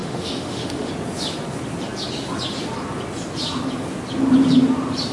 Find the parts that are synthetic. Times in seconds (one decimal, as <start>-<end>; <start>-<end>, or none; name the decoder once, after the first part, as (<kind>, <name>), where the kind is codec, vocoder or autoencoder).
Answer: 0.0-0.9 (autoencoder, DAC-VAE)